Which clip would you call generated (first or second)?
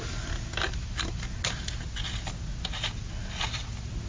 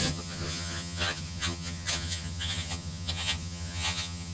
second